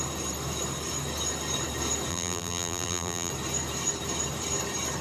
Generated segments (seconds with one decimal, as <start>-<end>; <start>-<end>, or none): 2.1-3.3